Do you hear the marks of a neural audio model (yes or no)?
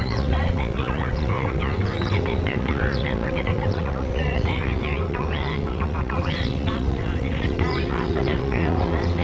yes